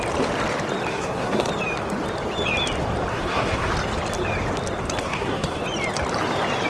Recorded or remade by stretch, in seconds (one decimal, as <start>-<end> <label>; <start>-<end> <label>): 0.0-0.9 recorded; 0.9-1.5 remade; 1.5-3.1 recorded; 3.1-3.7 remade; 3.7-5.0 recorded; 5.0-5.6 remade; 5.6-6.7 recorded